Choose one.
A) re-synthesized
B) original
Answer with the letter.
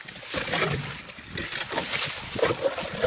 A